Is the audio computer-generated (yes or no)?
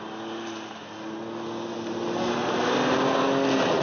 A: no